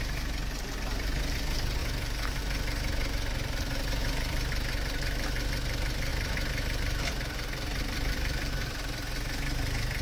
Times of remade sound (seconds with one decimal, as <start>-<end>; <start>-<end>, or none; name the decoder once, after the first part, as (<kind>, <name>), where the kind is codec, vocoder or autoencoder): 1.8-2.4 (vocoder, BigVGAN v2); 4.0-4.5; 6.1-8.5